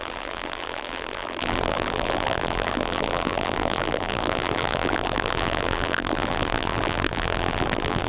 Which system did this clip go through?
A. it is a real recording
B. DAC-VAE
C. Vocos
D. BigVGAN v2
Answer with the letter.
D